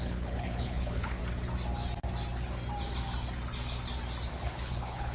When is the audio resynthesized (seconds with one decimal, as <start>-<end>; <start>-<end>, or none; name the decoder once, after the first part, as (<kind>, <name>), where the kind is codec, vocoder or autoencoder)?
0.0-1.2 (codec, HILCodec); 4.3-5.1